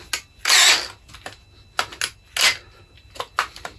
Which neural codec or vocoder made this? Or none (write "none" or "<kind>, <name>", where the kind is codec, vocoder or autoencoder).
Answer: none